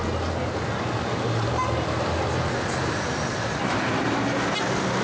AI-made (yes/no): no